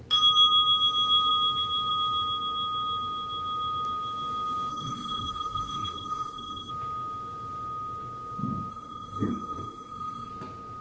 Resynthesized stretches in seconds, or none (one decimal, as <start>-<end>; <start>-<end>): 4.7-6.7; 8.7-10.3